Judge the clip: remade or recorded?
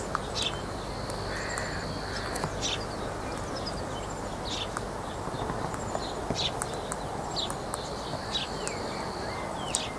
recorded